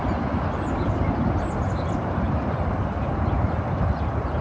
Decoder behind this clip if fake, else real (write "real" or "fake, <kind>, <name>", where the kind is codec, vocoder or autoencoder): real